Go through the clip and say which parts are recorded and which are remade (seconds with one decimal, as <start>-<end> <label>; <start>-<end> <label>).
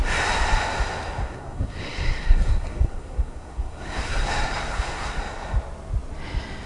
0.0-1.2 recorded; 1.2-5.2 remade; 5.2-6.7 recorded